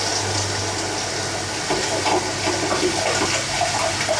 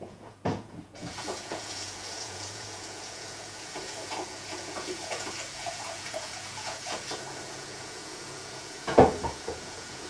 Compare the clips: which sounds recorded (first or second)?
first